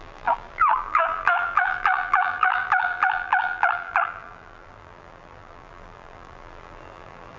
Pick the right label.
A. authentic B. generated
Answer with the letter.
B